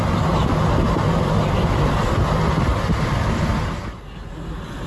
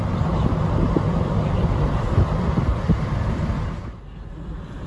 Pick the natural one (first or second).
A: first